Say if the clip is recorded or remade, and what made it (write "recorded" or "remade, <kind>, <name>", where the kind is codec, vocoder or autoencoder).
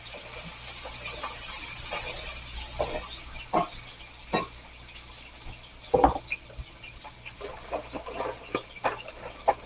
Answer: recorded